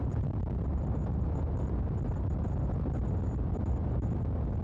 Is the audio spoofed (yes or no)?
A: no